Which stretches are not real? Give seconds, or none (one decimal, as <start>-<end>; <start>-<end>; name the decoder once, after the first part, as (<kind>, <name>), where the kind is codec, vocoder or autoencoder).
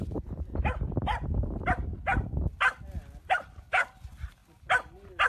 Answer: 0.0-0.5 (vocoder, BigVGAN v2); 3.5-4.4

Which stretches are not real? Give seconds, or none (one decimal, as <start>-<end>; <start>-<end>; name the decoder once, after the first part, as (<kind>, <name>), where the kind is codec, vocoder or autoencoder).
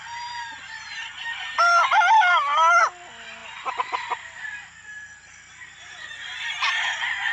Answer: none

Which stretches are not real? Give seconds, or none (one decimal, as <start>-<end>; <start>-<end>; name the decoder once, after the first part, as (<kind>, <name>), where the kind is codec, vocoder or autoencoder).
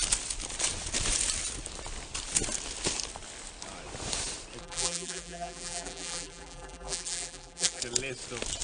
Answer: 4.6-7.8 (vocoder, BigVGAN v2)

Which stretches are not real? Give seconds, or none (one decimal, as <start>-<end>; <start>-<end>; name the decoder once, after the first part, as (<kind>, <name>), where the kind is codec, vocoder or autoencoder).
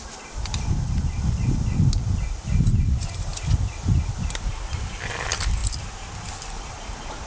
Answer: none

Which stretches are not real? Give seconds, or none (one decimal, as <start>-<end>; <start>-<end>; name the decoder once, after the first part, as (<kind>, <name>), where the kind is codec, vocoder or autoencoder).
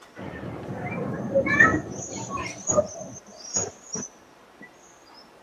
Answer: 0.0-5.4 (vocoder, BigVGAN v2)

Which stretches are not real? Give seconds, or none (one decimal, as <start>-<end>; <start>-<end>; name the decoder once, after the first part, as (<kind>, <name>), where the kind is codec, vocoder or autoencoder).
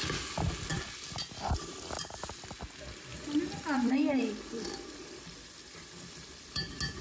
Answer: 3.1-6.6 (vocoder, BigVGAN v2)